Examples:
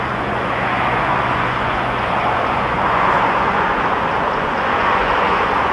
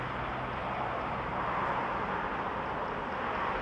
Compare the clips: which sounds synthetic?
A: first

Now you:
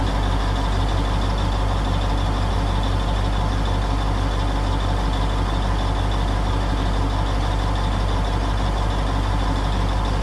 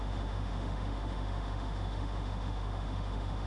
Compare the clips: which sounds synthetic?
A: second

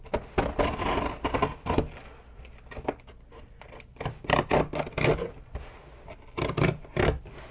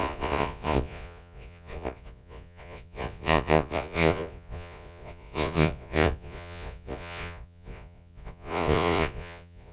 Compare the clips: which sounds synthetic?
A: second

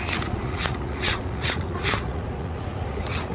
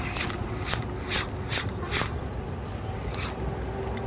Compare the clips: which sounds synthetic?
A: first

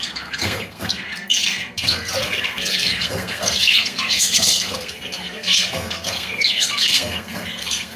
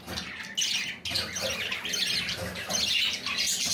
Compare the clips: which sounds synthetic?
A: first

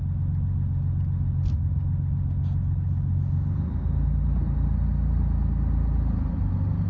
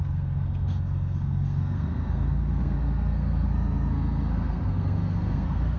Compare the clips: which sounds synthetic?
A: second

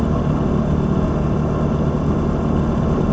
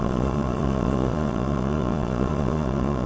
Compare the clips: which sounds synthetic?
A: second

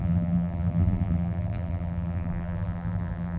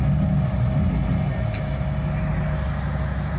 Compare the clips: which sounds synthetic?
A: first